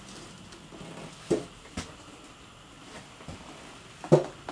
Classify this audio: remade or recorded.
recorded